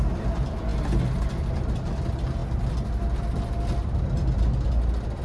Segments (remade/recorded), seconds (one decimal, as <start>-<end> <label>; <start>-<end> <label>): 0.0-5.2 recorded